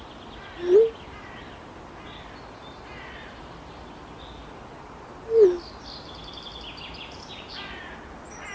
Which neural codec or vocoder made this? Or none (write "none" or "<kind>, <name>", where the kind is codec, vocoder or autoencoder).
none